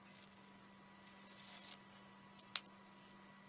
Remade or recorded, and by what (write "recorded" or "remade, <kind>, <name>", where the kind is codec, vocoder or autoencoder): recorded